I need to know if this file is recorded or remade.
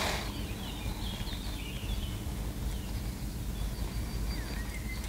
recorded